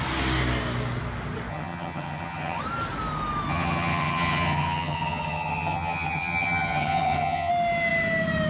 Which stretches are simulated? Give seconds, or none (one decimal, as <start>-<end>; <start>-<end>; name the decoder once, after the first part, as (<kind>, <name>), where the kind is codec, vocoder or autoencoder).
1.5-2.6 (vocoder, HiFi-GAN); 3.5-7.5